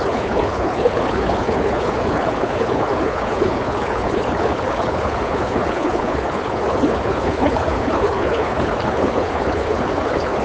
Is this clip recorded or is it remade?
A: remade